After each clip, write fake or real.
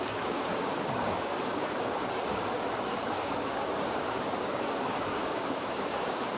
fake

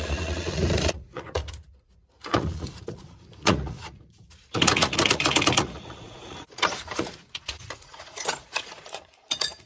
fake